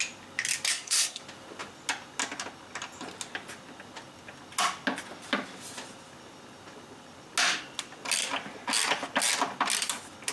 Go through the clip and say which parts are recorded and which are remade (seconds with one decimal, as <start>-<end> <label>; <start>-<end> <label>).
0.0-0.7 recorded; 0.7-1.2 remade; 1.2-10.3 recorded